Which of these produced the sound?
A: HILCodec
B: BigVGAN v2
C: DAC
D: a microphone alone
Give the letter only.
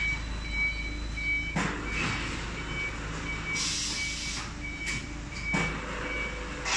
D